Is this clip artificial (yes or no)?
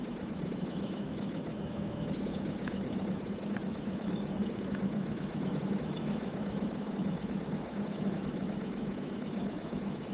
yes